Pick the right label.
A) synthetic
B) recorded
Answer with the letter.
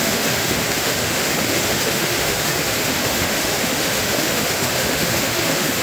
A